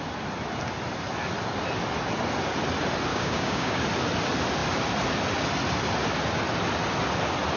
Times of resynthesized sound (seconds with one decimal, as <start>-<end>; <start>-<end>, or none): 3.1-3.8

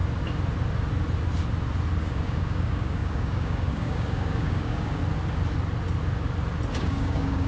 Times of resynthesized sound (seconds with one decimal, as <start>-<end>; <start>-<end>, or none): 2.0-5.0; 6.7-7.5

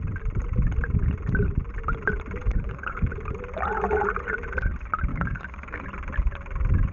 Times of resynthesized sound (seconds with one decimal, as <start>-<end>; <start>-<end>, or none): 2.4-3.1; 5.1-5.8